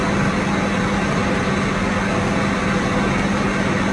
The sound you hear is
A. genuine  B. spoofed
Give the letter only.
A